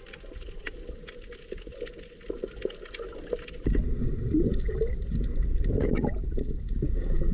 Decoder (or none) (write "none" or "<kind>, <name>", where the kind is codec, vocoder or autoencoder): none